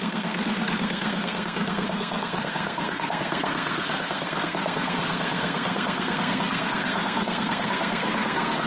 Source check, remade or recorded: remade